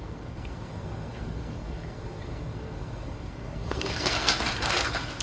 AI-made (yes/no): yes